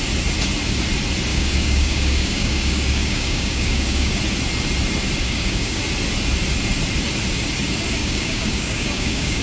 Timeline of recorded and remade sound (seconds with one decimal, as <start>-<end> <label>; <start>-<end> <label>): 0.0-1.3 recorded; 1.3-4.2 remade; 4.2-5.2 recorded; 5.2-5.8 remade; 5.8-8.0 recorded; 8.0-9.4 remade